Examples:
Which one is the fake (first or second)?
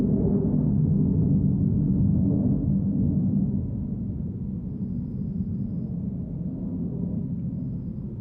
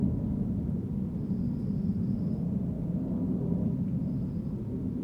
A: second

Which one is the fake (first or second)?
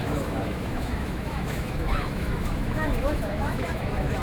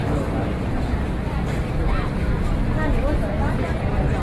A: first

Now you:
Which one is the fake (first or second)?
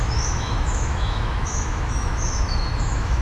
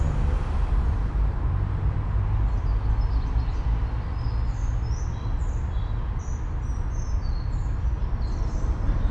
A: first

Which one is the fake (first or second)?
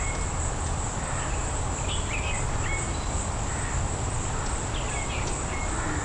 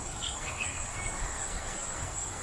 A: second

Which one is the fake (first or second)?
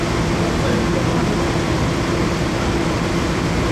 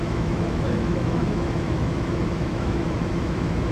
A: second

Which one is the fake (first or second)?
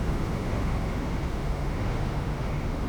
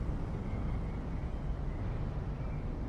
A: first